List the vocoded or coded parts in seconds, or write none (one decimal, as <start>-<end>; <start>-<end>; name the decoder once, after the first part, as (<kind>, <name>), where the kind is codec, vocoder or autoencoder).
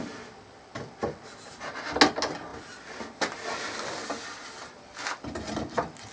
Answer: none